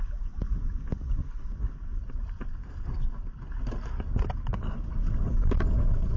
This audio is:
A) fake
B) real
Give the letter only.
B